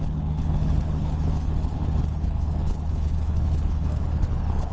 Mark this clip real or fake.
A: fake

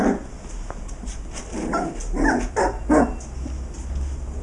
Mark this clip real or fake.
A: real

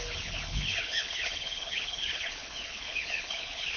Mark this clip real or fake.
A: fake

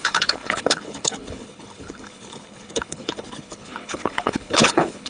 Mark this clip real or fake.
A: fake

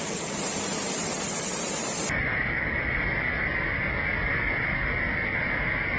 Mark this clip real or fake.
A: real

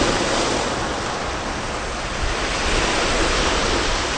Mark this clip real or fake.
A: real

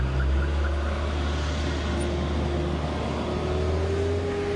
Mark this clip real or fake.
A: real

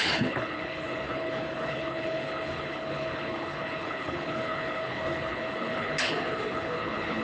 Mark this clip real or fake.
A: fake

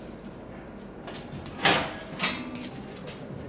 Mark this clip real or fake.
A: real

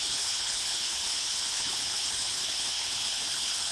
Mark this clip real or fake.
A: fake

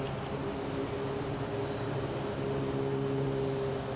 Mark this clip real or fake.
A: real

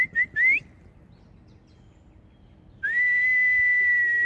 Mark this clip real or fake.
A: real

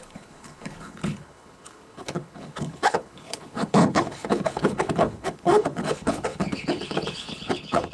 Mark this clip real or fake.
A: fake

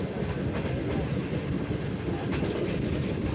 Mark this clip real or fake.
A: real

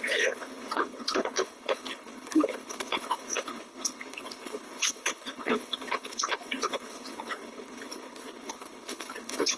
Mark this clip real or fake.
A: fake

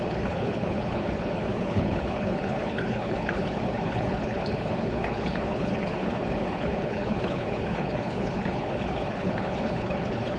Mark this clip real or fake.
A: fake